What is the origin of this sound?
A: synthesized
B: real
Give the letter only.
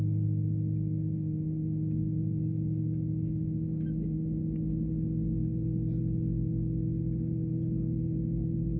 B